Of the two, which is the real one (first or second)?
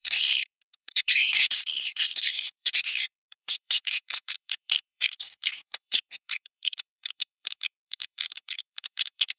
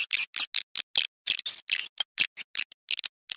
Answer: second